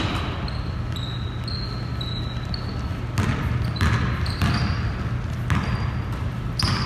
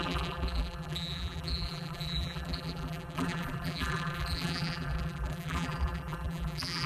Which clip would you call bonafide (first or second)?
first